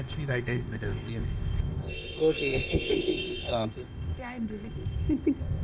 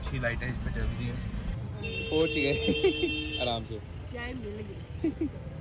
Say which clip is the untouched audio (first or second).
second